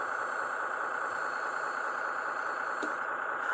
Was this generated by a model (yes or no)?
no